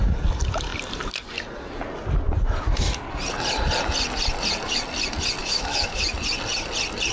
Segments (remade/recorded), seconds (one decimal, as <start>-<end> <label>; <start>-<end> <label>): 0.0-5.4 recorded; 5.4-6.0 remade; 6.0-7.1 recorded